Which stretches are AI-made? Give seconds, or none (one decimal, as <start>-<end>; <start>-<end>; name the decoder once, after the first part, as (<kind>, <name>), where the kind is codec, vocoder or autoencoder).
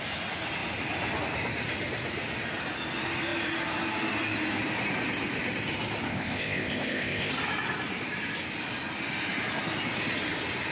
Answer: 6.1-7.3 (codec, ZipCodec)